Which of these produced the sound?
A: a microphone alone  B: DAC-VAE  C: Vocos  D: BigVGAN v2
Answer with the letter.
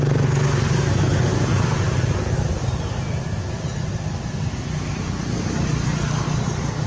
A